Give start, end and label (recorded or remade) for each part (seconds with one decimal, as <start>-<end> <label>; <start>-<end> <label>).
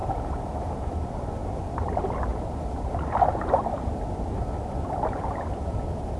0.0-0.9 recorded; 0.9-2.3 remade; 2.3-3.3 recorded; 3.3-6.2 remade